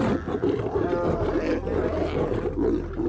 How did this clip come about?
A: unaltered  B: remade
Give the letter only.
A